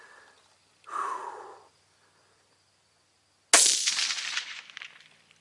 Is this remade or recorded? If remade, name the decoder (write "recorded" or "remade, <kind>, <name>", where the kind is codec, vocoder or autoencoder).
recorded